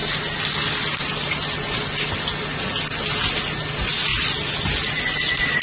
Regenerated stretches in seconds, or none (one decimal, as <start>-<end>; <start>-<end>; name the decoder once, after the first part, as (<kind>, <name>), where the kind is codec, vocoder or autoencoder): none

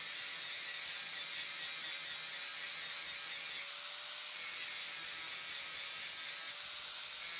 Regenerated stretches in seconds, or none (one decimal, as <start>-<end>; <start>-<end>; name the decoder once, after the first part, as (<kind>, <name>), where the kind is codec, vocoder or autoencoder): none

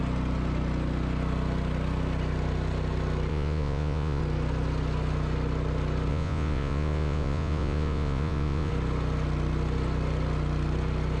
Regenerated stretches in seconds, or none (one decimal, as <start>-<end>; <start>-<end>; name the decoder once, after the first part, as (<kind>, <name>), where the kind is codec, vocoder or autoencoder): 3.3-4.2 (vocoder, Vocos); 6.1-8.7

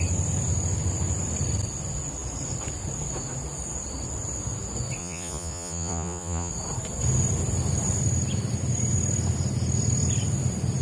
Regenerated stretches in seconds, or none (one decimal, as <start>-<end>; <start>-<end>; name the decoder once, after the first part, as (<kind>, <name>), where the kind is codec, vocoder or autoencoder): 5.0-6.5 (vocoder, Vocos)

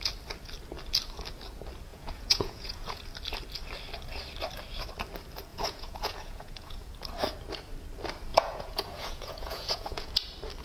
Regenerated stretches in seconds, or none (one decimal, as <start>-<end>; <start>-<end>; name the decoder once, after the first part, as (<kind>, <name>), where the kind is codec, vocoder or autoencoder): 1.9-3.0 (vocoder, Vocos); 5.5-6.9; 8.3-10.1

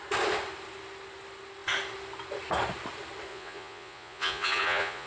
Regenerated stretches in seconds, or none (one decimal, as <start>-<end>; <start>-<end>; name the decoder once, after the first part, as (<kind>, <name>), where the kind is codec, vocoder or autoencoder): 3.3-5.1 (vocoder, Vocos)